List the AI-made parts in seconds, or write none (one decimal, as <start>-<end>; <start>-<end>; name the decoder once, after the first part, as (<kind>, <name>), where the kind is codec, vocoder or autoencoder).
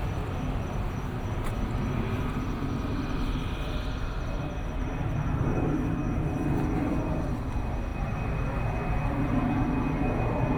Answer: none